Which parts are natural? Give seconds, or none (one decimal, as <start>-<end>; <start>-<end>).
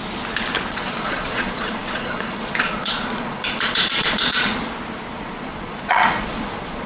0.0-0.7; 4.5-5.1